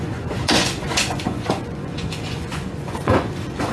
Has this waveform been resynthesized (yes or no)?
yes